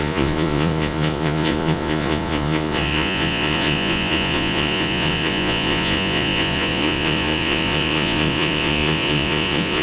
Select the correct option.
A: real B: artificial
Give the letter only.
B